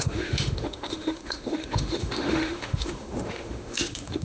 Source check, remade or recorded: remade